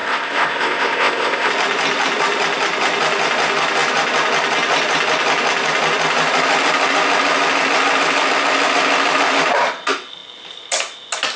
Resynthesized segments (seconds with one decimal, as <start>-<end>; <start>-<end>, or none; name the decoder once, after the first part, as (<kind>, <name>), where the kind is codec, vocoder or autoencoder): 0.0-1.5 (codec, ZipCodec)